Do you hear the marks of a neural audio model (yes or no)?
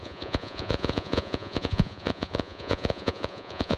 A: yes